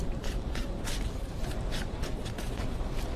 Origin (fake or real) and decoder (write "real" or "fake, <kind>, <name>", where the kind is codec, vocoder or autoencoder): fake, vocoder, BigVGAN v2